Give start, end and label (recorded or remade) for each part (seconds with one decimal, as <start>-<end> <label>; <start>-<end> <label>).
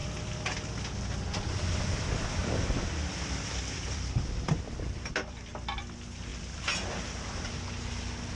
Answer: 0.0-1.8 remade; 1.8-2.4 recorded; 2.4-5.4 remade; 5.4-6.3 recorded; 6.3-7.4 remade; 7.4-8.4 recorded